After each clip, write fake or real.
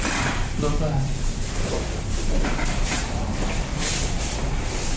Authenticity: fake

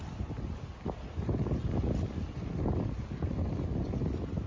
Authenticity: real